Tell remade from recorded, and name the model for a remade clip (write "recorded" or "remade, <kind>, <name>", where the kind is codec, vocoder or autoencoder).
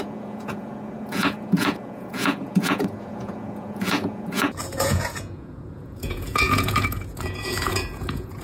remade, vocoder, Vocos